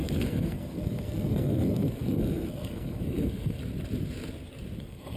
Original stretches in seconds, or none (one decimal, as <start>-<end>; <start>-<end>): 3.6-4.8